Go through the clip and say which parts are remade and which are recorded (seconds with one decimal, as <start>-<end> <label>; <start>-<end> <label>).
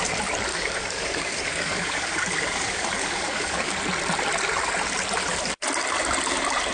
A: 0.0-0.5 recorded; 0.5-3.7 remade; 3.7-6.7 recorded